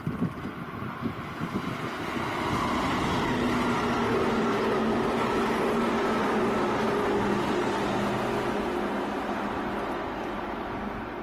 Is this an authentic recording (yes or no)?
yes